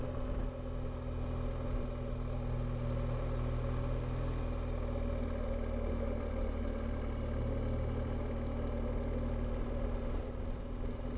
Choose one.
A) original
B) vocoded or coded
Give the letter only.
A